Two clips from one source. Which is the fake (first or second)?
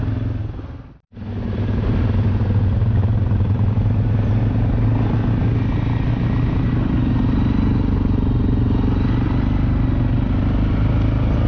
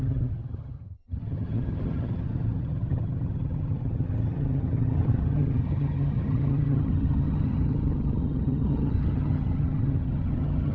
second